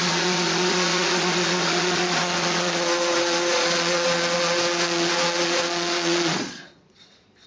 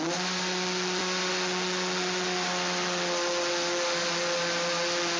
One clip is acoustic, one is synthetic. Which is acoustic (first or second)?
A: second